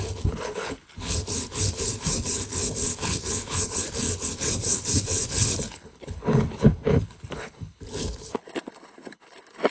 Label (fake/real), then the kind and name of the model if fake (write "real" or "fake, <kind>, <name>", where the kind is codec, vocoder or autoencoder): fake, codec, HILCodec